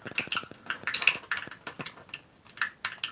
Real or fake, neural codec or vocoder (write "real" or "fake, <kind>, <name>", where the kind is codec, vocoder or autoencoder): real